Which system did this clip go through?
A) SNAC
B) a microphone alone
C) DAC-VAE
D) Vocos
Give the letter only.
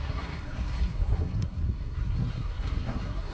A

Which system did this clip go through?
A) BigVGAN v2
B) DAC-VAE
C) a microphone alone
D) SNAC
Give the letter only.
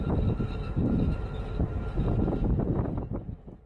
C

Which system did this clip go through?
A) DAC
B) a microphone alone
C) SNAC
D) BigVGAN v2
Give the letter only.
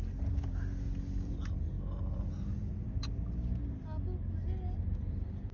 B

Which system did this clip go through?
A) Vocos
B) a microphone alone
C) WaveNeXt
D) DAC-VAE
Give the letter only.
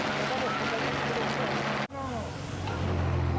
B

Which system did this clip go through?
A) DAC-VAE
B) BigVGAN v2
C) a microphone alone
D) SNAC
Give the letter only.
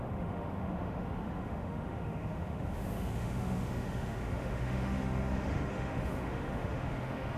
A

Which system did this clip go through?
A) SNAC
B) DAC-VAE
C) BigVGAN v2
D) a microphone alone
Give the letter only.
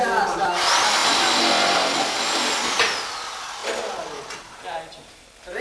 D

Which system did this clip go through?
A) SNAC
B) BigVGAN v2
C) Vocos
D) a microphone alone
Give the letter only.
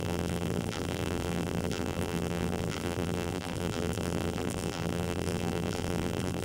B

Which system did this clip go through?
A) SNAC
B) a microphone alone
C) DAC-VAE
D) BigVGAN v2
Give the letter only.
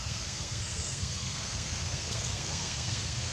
A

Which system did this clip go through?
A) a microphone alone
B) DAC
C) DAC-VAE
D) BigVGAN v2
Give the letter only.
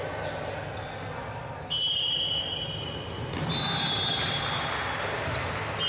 A